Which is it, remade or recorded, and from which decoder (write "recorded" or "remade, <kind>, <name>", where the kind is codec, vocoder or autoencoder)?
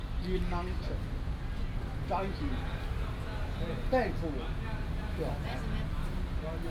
recorded